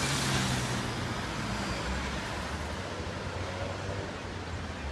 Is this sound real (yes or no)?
yes